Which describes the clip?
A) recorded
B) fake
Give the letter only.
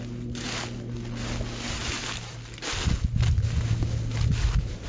A